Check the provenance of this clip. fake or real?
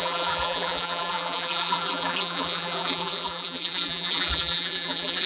fake